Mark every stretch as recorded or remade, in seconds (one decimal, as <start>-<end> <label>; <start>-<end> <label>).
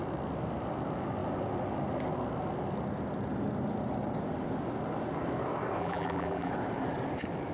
0.0-5.8 recorded; 5.8-6.5 remade; 6.5-7.5 recorded